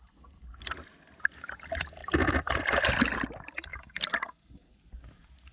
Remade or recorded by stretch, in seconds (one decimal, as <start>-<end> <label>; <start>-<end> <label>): 0.0-2.0 recorded; 2.0-2.9 remade; 2.9-5.5 recorded